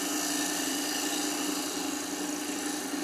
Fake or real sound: real